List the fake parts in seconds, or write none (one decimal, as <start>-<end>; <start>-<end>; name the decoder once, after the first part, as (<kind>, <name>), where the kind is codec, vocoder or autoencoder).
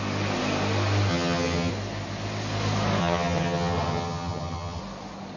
1.1-1.7 (vocoder, HiFi-GAN); 3.0-4.8